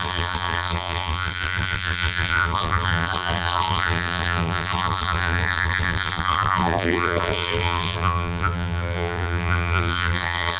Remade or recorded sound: remade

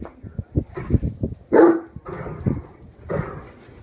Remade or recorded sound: recorded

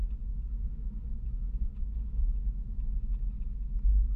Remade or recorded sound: recorded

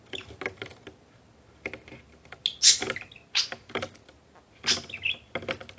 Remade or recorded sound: recorded